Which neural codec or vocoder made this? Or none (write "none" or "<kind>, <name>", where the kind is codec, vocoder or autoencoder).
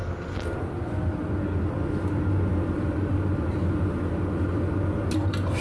none